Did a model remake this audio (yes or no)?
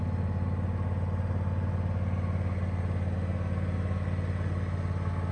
no